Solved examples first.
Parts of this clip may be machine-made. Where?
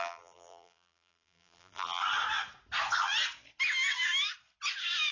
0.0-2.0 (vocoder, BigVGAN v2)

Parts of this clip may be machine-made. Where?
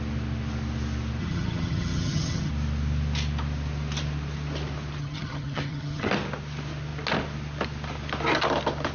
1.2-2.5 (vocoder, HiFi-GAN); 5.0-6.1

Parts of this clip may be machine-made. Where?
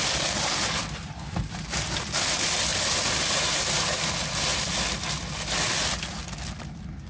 none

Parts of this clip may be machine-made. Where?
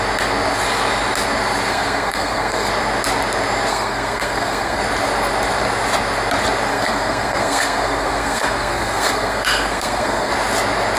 1.7-2.7 (codec, SNAC); 3.7-4.8; 6.7-10.3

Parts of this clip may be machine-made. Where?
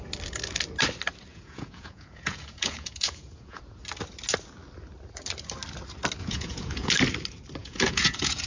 1.3-3.6 (vocoder, Vocos); 6.2-6.9; 7.6-8.5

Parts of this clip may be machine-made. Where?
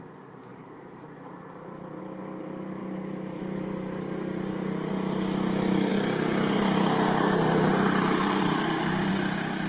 0.5-2.0 (vocoder, BigVGAN v2); 5.9-9.1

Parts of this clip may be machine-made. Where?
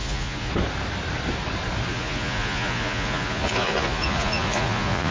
0.0-0.5 (vocoder, Vocos); 1.9-5.1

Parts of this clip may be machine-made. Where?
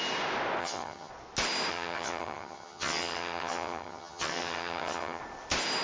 0.6-1.1 (vocoder, HiFi-GAN); 1.7-5.2